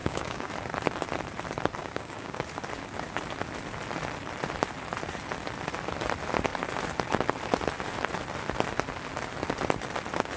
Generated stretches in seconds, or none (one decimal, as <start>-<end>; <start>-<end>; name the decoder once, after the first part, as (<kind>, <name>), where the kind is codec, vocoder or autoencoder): 0.0-0.5 (codec, DAC); 1.8-2.4